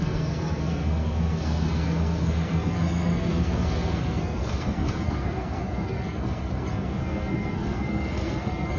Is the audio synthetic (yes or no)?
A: yes